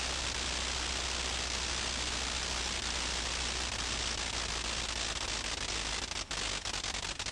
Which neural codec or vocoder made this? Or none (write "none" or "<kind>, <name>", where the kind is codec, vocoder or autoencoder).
none